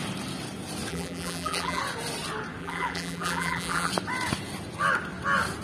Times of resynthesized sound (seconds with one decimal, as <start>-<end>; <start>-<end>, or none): 0.9-1.8; 2.6-3.9